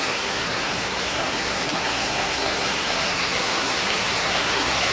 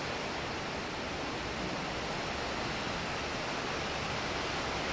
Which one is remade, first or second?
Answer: first